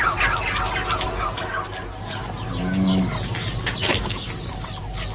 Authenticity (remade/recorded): recorded